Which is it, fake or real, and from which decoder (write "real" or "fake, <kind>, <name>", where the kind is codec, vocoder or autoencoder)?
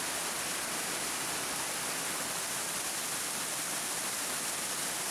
real